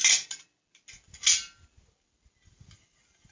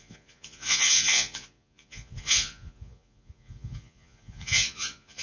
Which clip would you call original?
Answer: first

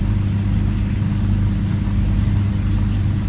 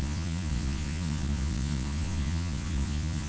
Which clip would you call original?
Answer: first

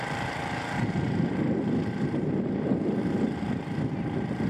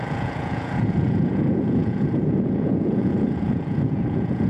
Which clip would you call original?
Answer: first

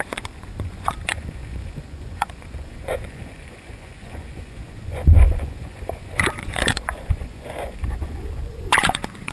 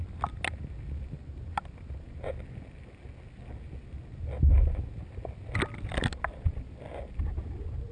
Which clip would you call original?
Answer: second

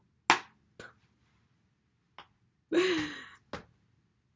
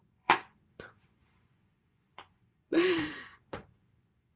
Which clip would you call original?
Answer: first